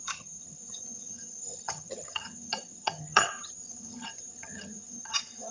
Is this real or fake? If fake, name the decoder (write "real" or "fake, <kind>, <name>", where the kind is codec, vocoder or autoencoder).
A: fake, vocoder, HiFi-GAN